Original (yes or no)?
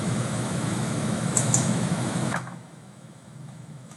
no